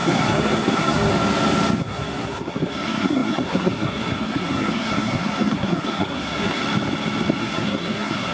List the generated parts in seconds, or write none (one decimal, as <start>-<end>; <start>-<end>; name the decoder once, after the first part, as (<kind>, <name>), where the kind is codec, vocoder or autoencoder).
0.0-1.1 (codec, SNAC); 1.8-6.6; 7.4-8.3

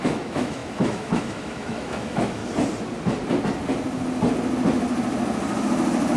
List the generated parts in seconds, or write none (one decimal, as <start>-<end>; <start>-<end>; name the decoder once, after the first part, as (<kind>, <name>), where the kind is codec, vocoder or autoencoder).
0.0-2.4 (autoencoder, DAC-VAE)